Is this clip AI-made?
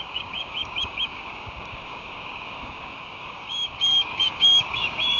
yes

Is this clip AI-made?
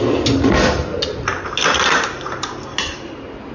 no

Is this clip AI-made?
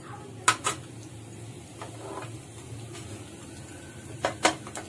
no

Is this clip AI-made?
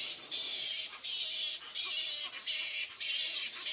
no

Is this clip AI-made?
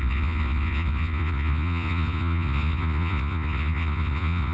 yes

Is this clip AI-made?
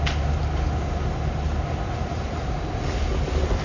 no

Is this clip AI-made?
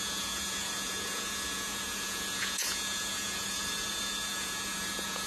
yes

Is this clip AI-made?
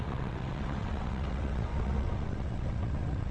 yes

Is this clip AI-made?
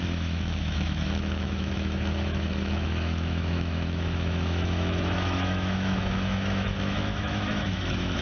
yes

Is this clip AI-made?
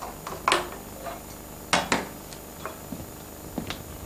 no